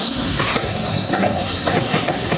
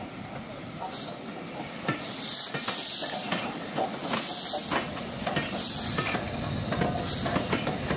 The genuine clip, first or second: second